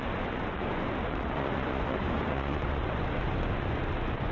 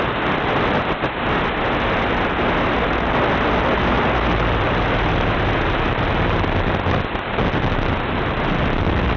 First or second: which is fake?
first